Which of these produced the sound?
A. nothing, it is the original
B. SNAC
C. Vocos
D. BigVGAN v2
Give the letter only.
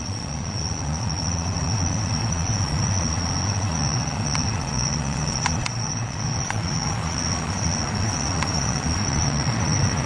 C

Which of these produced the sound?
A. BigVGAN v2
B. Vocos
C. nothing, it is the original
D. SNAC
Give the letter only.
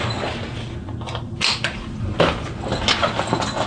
C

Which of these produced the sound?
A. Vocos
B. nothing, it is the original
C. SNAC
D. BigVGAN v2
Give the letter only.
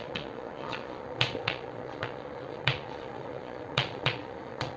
A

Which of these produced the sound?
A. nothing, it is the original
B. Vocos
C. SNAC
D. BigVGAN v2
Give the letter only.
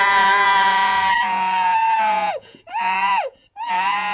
B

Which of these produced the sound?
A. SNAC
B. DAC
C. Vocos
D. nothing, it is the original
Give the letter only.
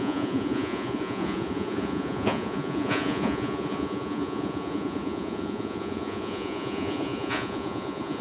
C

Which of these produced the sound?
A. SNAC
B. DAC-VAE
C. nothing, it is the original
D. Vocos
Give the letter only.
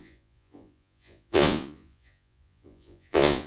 D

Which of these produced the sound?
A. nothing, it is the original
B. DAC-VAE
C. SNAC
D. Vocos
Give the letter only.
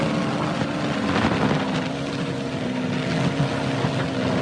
A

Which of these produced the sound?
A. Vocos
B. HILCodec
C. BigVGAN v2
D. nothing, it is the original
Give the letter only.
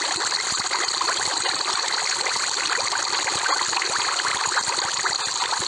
D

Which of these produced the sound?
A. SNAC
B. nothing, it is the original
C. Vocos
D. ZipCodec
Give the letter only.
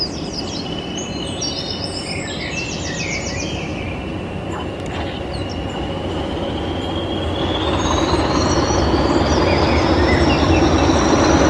B